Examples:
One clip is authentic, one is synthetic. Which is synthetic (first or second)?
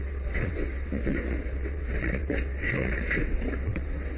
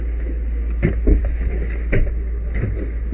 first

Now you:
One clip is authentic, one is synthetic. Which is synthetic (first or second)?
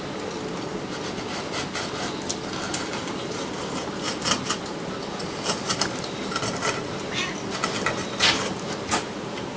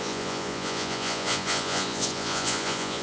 second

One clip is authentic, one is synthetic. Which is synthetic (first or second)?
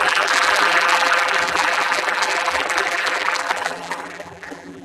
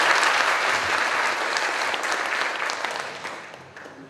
first